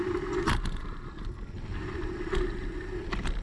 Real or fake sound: real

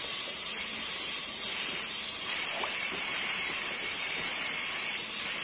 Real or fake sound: fake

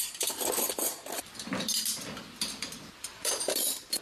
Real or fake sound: fake